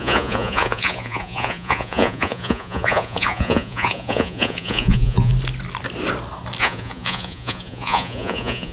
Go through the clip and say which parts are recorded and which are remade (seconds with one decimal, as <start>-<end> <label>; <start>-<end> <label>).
0.0-5.3 remade; 5.3-6.6 recorded; 6.6-8.7 remade